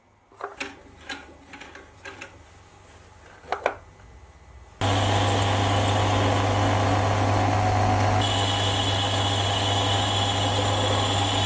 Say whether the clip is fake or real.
real